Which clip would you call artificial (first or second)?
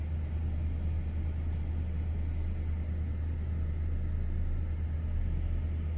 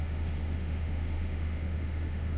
second